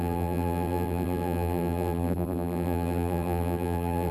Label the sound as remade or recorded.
remade